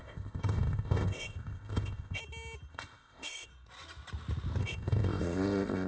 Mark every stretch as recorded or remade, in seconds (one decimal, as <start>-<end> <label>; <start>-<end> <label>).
0.0-2.2 remade; 2.2-2.7 recorded; 2.7-3.5 remade; 3.5-4.6 recorded; 4.6-5.9 remade